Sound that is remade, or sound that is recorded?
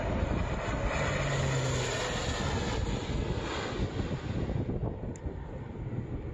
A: recorded